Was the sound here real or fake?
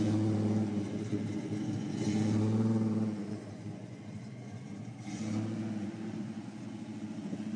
fake